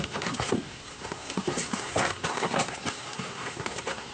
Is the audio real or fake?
fake